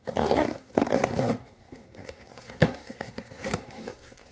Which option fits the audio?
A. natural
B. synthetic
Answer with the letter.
B